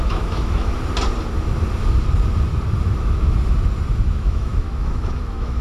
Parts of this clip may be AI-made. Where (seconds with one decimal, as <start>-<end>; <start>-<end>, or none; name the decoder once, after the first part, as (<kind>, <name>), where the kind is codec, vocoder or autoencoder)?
0.0-0.7 (autoencoder, DAC-VAE); 4.1-5.6